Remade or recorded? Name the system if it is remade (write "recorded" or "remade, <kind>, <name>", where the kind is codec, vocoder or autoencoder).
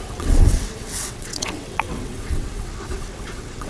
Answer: remade, vocoder, WaveNeXt